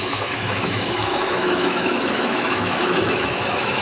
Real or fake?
fake